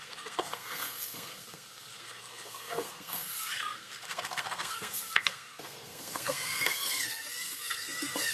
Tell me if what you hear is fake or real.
fake